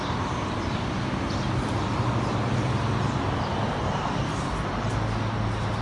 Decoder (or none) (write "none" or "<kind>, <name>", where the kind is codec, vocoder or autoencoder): none